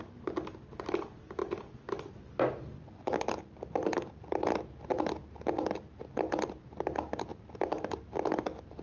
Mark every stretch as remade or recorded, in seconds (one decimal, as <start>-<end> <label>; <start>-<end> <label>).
0.0-8.8 recorded

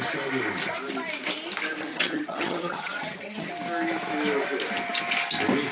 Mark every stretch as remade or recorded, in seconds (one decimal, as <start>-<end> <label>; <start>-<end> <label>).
0.0-1.9 recorded; 1.9-3.5 remade; 3.5-5.7 recorded